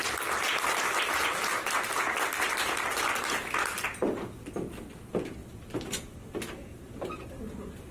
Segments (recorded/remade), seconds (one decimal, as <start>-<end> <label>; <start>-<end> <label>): 0.0-5.4 recorded; 5.4-6.9 remade; 6.9-7.9 recorded